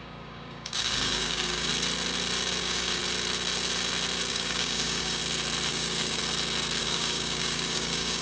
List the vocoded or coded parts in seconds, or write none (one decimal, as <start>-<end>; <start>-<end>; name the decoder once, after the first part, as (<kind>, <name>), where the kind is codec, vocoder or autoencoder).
0.0-1.7 (codec, DAC); 2.6-3.0; 4.3-5.2; 5.7-6.2; 6.8-8.2